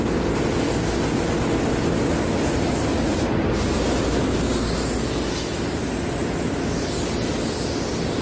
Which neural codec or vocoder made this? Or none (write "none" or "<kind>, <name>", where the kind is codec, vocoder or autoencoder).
none